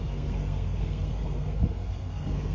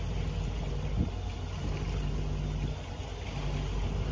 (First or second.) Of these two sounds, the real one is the second